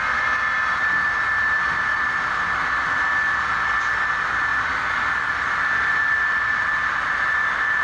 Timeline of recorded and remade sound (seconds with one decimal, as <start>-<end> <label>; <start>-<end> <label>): 0.0-1.9 recorded; 1.9-4.1 remade; 4.1-4.5 recorded; 4.5-5.1 remade; 5.1-7.8 recorded